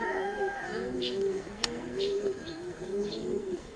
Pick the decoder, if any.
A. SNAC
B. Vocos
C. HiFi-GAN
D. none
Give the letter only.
A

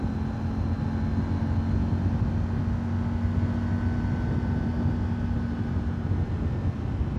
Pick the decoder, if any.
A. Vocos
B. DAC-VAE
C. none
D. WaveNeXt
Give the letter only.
C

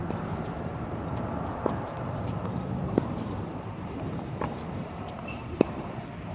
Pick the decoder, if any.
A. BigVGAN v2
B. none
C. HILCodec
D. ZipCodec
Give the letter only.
A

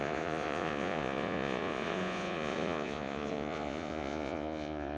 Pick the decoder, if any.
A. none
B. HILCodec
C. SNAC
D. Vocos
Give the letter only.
D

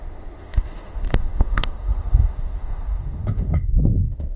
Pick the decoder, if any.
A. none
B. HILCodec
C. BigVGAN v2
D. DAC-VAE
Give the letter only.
D